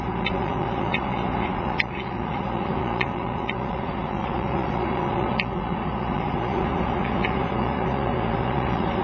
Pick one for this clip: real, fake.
fake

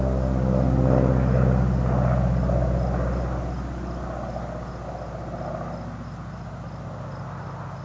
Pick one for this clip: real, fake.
real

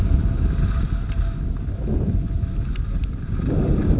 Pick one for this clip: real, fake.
real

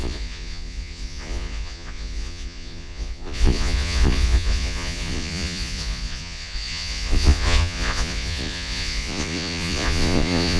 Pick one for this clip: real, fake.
fake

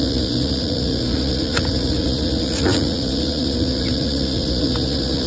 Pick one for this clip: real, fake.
fake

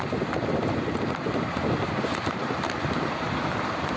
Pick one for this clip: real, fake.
real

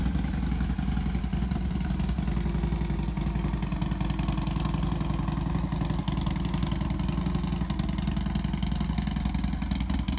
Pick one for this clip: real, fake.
real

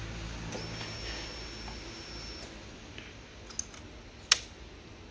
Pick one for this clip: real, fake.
real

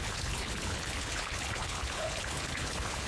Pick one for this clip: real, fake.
fake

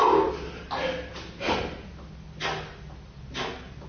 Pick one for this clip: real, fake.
real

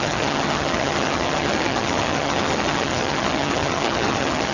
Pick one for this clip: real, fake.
fake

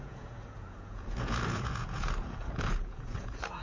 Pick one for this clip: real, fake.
fake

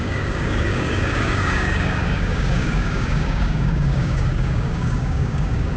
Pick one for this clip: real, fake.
fake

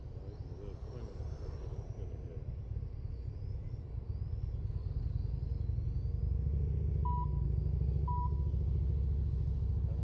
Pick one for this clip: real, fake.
real